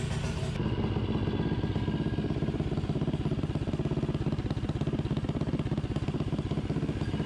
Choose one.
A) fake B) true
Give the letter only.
B